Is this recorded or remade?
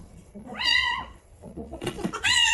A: remade